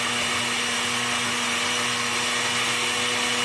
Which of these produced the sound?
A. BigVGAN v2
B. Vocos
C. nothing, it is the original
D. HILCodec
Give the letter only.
C